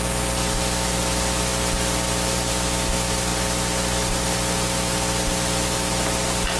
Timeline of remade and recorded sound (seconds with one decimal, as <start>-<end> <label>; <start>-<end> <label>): 0.0-6.6 recorded